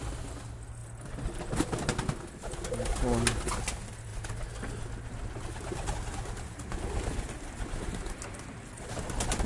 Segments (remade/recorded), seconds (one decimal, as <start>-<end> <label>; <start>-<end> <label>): 0.0-9.5 recorded